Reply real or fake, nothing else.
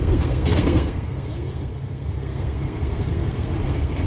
fake